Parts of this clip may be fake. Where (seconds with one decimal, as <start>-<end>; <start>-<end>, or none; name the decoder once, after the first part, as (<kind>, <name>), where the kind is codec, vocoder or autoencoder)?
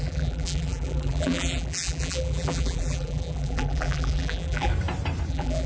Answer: 0.0-4.7 (vocoder, BigVGAN v2); 5.3-5.7